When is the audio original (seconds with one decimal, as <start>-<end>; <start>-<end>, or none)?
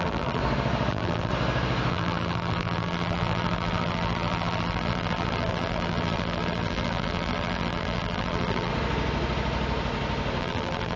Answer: 0.4-0.9; 1.3-1.9; 8.7-10.4